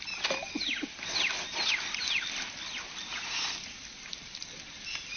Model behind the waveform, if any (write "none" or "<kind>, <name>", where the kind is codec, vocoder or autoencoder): none